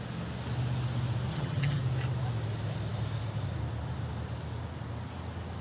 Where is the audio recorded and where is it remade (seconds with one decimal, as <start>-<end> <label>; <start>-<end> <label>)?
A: 0.0-1.3 recorded; 1.3-1.8 remade; 1.8-5.6 recorded